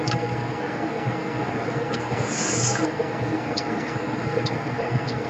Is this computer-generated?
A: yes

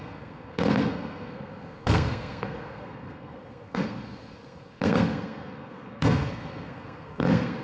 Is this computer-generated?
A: yes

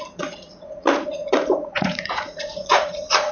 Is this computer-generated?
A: yes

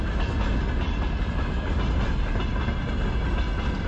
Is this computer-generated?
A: no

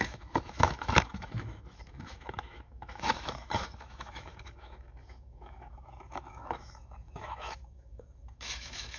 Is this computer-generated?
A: yes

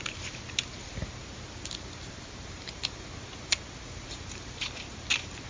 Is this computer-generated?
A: no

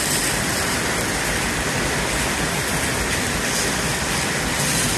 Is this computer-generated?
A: no